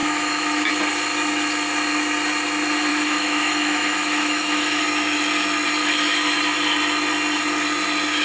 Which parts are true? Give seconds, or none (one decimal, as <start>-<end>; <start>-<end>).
0.7-2.9; 4.8-5.8; 6.4-8.2